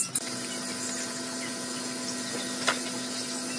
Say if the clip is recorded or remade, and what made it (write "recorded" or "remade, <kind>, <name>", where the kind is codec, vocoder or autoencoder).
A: recorded